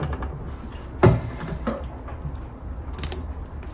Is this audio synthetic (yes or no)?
no